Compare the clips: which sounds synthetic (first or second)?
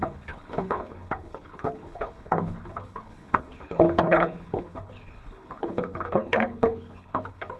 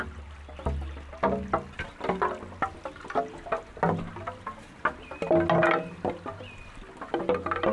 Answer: first